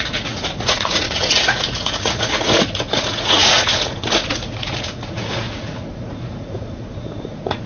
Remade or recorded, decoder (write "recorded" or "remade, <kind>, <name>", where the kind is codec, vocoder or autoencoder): remade, vocoder, Vocos